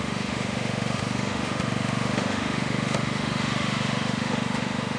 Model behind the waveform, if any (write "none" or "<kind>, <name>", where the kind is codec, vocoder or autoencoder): autoencoder, DAC-VAE